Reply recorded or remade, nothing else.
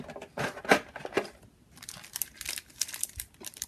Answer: recorded